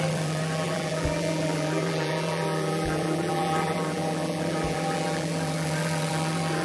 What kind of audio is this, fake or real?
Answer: fake